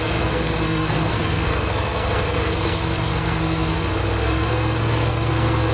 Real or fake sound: fake